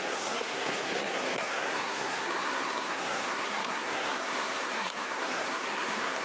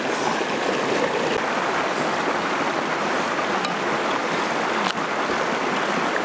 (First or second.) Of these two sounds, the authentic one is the second